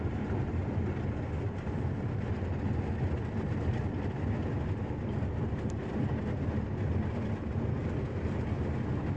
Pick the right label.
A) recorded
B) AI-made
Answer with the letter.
A